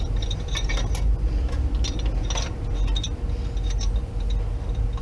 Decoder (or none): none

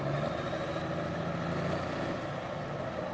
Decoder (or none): none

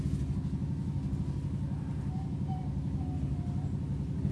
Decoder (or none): none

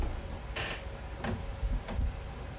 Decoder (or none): none